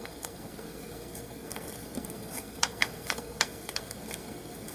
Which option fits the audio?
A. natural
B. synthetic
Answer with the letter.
B